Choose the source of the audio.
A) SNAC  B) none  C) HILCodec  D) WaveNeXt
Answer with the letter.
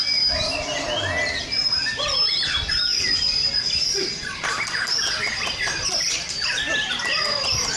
B